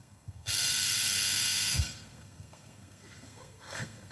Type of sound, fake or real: fake